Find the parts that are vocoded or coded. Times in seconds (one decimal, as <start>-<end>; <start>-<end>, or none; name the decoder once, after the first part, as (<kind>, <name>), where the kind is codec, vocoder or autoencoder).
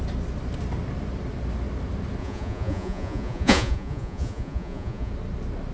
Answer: 2.2-5.1 (vocoder, Vocos)